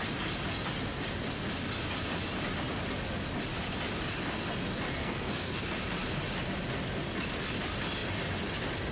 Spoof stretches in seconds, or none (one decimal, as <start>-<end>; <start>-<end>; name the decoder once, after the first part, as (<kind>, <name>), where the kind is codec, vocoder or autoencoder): 5.0-5.6 (codec, SNAC)